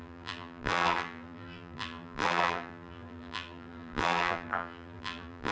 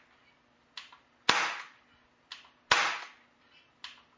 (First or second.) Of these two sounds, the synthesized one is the first